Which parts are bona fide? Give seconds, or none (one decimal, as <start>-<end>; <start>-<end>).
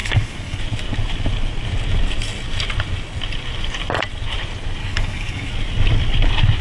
0.6-4.8; 5.5-6.6